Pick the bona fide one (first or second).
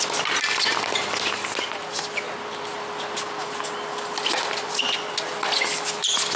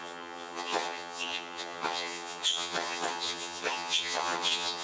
first